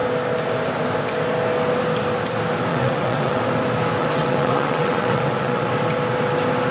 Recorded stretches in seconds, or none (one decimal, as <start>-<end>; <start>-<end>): 0.0-2.7; 3.4-4.0; 5.7-6.7